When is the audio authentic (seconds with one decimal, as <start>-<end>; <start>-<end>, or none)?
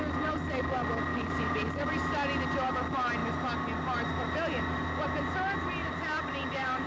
0.0-1.1; 1.8-5.8